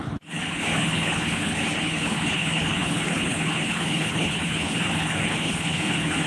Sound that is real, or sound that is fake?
fake